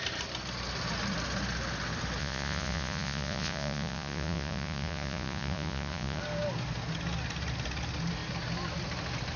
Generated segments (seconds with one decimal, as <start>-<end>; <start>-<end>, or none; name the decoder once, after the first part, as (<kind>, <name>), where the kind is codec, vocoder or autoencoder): 2.2-6.2 (vocoder, Vocos)